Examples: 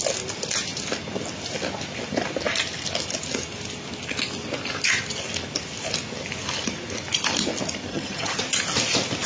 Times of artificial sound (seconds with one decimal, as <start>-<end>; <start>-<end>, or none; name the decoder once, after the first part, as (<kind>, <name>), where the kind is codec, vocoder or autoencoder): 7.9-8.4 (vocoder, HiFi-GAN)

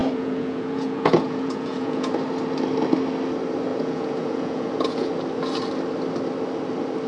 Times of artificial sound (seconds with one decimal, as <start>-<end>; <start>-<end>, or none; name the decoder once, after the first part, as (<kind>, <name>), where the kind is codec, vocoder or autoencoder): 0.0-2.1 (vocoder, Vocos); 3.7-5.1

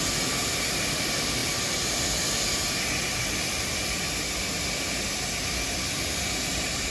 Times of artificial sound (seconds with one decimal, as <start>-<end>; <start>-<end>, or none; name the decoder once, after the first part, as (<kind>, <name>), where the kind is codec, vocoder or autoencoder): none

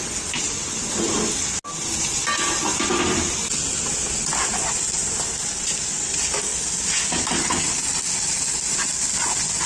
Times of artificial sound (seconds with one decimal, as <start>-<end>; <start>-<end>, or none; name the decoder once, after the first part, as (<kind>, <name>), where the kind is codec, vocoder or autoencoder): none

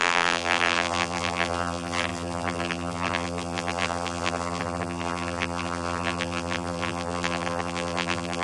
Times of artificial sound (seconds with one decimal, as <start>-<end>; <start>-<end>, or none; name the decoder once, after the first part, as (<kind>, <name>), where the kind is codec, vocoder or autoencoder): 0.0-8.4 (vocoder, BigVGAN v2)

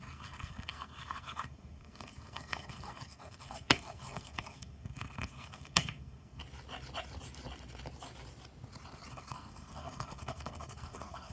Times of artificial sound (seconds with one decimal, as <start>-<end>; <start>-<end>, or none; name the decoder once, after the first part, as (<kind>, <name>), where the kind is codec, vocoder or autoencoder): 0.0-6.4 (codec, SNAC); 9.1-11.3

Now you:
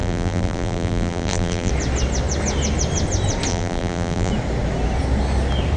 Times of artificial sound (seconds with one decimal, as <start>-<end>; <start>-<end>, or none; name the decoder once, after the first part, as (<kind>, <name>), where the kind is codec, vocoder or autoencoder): 0.0-1.7 (vocoder, BigVGAN v2); 3.5-4.3

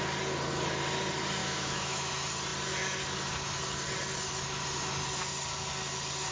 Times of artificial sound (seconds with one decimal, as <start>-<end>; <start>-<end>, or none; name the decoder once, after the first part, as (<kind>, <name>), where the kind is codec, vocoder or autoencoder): 1.4-2.1 (autoencoder, DAC-VAE)